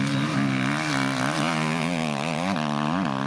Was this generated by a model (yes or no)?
no